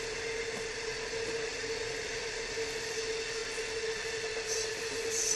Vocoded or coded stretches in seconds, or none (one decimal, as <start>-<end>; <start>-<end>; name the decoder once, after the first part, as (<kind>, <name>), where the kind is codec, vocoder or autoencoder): none